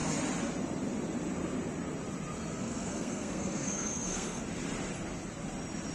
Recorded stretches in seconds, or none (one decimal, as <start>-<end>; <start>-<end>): 0.0-2.6; 4.4-5.9